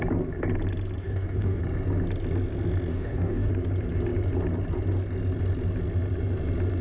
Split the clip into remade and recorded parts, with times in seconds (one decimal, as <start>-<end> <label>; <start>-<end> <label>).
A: 0.0-1.0 recorded; 1.0-1.6 remade; 1.6-2.9 recorded; 2.9-3.5 remade; 3.5-6.8 recorded